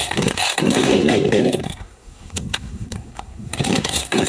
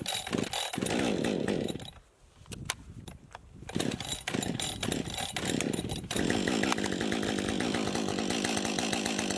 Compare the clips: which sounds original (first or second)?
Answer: second